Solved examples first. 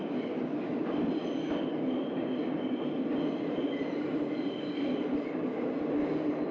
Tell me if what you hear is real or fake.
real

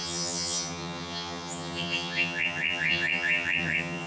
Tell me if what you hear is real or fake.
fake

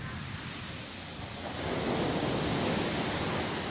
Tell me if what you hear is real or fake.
real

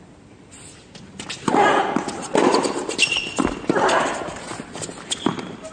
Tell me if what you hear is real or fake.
real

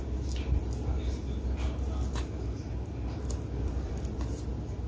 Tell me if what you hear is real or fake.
real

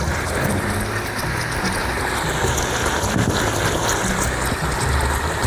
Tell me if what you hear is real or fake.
real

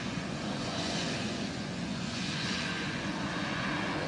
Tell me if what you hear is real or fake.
fake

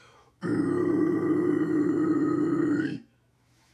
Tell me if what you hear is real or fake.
fake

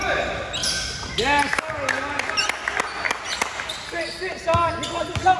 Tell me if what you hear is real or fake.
real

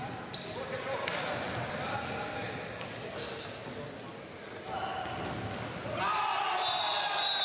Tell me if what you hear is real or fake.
real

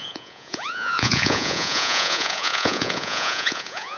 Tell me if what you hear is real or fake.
fake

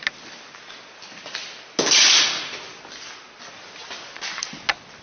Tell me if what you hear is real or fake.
real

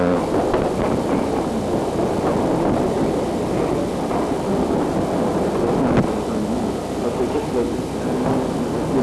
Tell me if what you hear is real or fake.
real